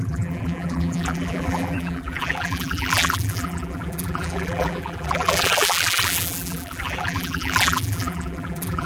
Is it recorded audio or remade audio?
remade